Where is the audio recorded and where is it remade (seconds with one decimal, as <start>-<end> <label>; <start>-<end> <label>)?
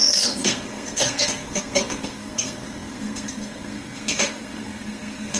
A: 0.0-5.4 remade